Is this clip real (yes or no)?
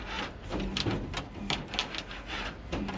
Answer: yes